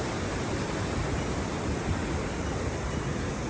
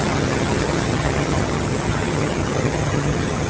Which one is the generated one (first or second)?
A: second